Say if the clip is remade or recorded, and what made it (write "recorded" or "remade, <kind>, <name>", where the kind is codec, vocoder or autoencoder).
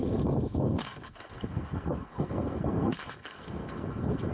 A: remade, codec, SNAC